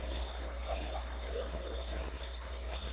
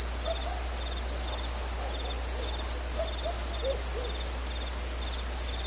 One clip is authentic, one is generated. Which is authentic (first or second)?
second